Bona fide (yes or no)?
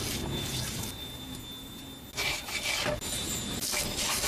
yes